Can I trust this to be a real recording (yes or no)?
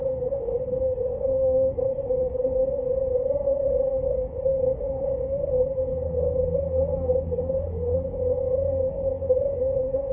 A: no